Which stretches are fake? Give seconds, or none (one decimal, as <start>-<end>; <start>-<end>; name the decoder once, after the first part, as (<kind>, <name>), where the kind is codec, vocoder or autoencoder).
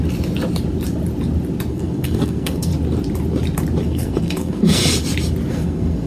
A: 1.7-2.7 (codec, SNAC); 3.8-4.8; 5.5-6.1